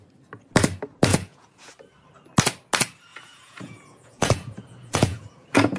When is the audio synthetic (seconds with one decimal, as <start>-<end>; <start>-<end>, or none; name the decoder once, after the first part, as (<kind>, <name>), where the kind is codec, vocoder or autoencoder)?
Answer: 1.1-1.7 (vocoder, Vocos); 3.1-5.8